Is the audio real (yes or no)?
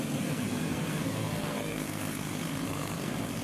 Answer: no